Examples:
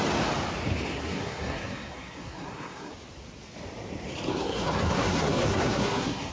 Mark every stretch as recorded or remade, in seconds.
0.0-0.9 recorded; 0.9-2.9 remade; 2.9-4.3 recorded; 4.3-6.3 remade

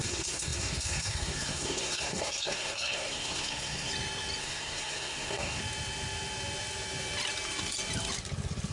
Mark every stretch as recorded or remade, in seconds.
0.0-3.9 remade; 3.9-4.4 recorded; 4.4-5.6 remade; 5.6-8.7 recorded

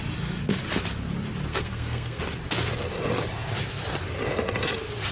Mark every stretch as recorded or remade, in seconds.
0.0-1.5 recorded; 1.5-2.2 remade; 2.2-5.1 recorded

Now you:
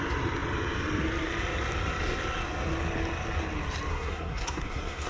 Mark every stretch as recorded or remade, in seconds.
0.0-3.9 recorded; 3.9-5.1 remade

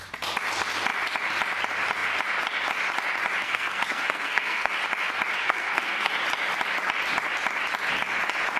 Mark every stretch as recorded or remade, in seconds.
0.0-3.4 recorded; 3.4-4.7 remade; 4.7-5.4 recorded; 5.4-6.1 remade; 6.1-8.6 recorded

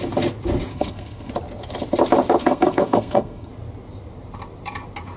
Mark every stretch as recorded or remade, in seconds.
0.0-0.7 recorded; 0.7-1.3 remade; 1.3-2.4 recorded; 2.4-3.5 remade; 3.5-5.2 recorded